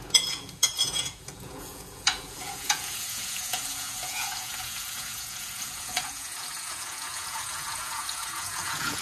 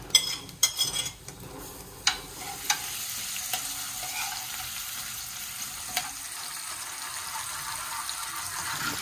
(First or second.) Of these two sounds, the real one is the second